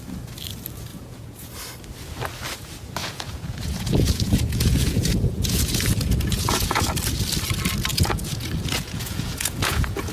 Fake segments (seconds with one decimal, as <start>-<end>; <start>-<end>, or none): 0.9-1.5; 3.0-6.8; 7.9-10.1